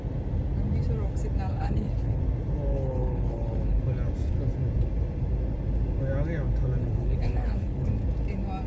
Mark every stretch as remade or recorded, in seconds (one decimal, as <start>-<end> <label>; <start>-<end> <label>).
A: 0.0-1.5 recorded; 1.5-2.2 remade; 2.2-2.7 recorded; 2.7-3.8 remade; 3.8-6.8 recorded; 6.8-7.9 remade; 7.9-8.7 recorded